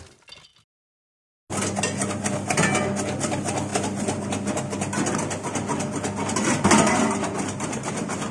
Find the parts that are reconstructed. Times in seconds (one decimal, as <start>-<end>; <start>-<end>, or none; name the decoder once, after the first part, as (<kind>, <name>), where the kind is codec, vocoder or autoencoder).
none